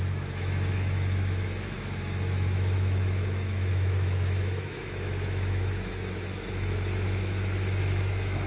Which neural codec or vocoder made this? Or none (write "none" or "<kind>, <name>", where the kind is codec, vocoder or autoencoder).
autoencoder, DAC-VAE